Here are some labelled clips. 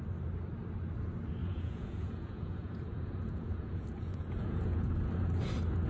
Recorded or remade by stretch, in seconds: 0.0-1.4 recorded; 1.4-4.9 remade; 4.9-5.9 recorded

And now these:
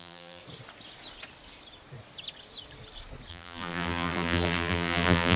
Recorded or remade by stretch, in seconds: 0.0-0.4 remade; 0.4-3.3 recorded; 3.3-5.4 remade

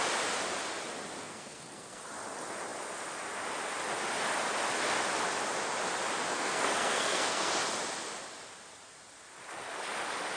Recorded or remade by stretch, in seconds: 0.0-1.2 recorded; 1.2-2.0 remade; 2.0-6.3 recorded; 6.3-7.5 remade; 7.5-10.4 recorded